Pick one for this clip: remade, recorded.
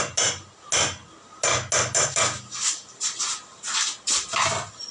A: recorded